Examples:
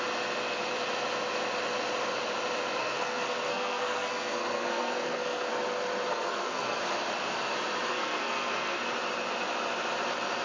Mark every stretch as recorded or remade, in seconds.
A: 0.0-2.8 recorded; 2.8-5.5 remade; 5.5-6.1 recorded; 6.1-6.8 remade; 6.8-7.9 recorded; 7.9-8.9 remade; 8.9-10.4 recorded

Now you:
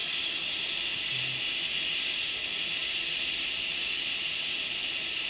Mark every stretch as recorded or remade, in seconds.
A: 0.0-5.3 recorded

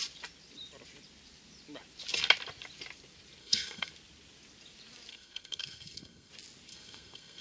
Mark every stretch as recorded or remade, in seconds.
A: 0.0-3.4 recorded; 3.4-3.9 remade; 3.9-5.1 recorded; 5.1-6.3 remade; 6.3-6.7 recorded; 6.7-7.4 remade

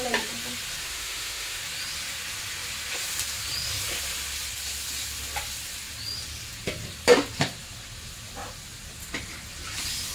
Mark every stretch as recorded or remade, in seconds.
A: 0.0-0.8 recorded; 0.8-1.6 remade; 1.6-10.1 recorded

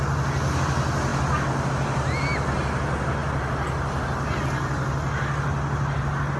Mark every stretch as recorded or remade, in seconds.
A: 0.0-6.4 recorded

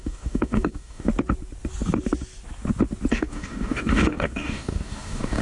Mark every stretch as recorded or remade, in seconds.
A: 0.0-1.1 remade; 1.1-3.1 recorded; 3.1-5.4 remade

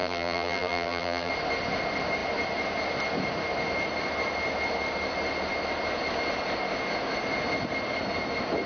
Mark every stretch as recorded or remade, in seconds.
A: 0.0-1.3 remade; 1.3-8.7 recorded